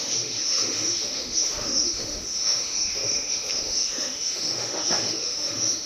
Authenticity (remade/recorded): remade